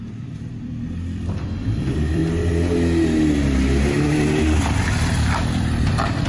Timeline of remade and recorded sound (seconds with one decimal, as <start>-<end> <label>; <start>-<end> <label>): 0.0-2.2 remade; 2.2-5.0 recorded; 5.0-6.3 remade